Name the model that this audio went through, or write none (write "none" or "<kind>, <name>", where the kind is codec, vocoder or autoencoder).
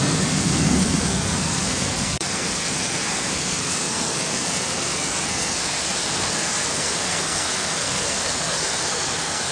codec, SNAC